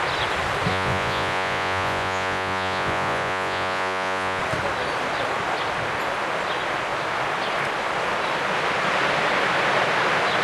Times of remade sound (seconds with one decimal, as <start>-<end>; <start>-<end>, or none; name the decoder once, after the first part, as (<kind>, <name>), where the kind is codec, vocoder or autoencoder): 0.7-4.4 (vocoder, Vocos)